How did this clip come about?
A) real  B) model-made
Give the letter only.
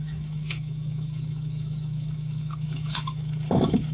B